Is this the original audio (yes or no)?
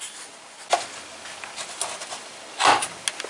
yes